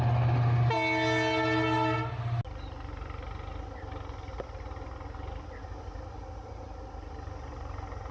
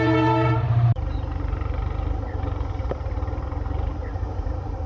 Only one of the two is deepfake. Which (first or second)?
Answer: second